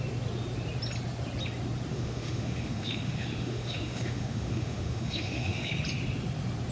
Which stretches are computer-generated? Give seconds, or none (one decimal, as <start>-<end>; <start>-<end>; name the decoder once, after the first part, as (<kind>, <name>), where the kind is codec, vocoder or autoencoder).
1.9-5.7 (autoencoder, DAC-VAE)

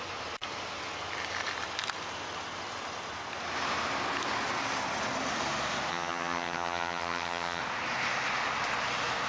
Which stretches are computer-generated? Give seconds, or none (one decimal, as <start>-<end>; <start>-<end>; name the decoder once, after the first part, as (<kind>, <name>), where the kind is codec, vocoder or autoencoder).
5.9-7.6 (vocoder, HiFi-GAN)

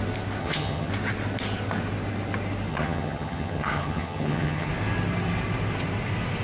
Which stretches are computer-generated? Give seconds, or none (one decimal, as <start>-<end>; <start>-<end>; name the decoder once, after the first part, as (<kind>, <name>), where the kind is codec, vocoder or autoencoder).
0.4-0.9 (vocoder, HiFi-GAN); 2.7-4.7

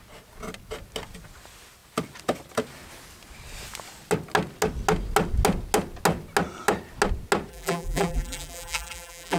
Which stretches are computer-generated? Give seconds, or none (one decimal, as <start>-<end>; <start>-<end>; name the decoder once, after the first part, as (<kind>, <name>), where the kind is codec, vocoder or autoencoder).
7.5-9.4 (vocoder, BigVGAN v2)

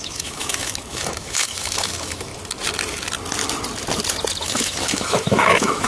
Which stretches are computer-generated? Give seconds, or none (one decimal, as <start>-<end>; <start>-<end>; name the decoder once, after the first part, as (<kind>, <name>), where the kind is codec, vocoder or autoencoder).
0.0-2.3 (autoencoder, DAC-VAE); 4.4-5.9

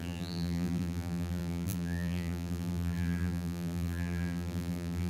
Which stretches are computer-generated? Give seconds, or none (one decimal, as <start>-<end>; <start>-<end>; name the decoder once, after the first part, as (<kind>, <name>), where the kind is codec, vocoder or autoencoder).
0.0-5.1 (vocoder, BigVGAN v2)